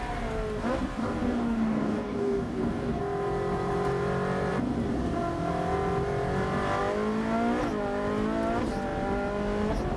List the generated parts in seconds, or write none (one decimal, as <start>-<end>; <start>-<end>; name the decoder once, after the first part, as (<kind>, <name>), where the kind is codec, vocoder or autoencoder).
1.0-3.0 (codec, DAC)